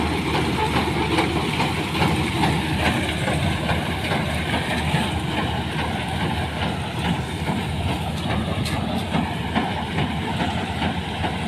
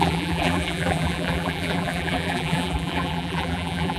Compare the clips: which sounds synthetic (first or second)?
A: second